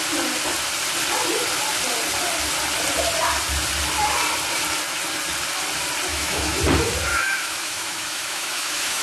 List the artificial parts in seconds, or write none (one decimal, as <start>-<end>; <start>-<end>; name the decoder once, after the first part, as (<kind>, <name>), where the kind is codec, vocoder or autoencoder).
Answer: 6.1-6.6 (autoencoder, DAC-VAE); 7.1-9.0